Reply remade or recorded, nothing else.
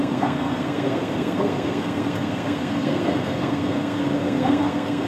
remade